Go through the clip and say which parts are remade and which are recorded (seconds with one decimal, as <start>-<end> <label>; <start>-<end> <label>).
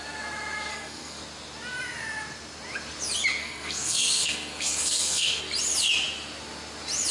0.0-0.7 recorded; 0.7-1.2 remade; 1.2-3.4 recorded; 3.4-5.4 remade; 5.4-7.1 recorded